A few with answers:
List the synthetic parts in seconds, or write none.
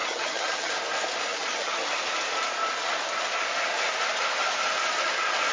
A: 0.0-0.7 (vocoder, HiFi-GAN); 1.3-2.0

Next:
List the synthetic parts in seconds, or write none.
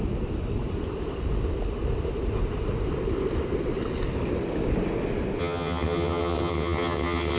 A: 5.4-7.4 (vocoder, HiFi-GAN)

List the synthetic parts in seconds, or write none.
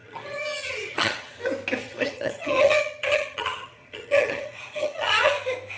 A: 0.0-1.4 (vocoder, HiFi-GAN); 1.8-5.3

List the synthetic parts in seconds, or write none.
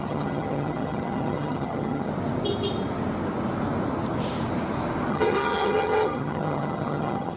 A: 0.0-2.1 (vocoder, HiFi-GAN); 5.1-7.4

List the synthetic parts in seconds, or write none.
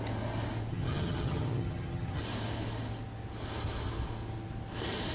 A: 0.7-2.2 (vocoder, HiFi-GAN)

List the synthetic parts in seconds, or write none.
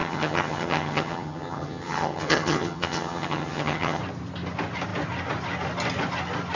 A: 0.0-4.0 (vocoder, HiFi-GAN)